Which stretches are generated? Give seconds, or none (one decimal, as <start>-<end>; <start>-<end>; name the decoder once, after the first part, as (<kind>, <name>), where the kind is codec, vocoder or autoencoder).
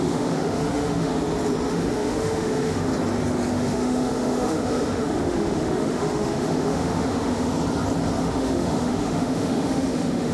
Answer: 0.0-1.1 (autoencoder, DAC-VAE); 1.7-2.9; 3.5-7.5; 8.2-10.3